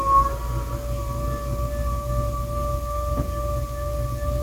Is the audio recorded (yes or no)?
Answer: yes